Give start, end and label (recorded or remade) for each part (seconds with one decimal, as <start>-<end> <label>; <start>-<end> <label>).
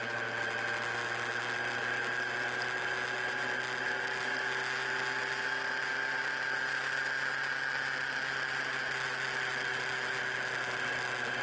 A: 0.0-11.4 recorded